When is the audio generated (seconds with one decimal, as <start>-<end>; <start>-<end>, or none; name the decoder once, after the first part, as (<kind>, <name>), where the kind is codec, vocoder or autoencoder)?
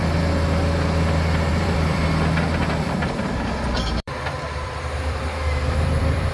1.5-2.0 (vocoder, BigVGAN v2); 2.7-6.3